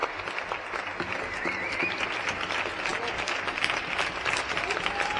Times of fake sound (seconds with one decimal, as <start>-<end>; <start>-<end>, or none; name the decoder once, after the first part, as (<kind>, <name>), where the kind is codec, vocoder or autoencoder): none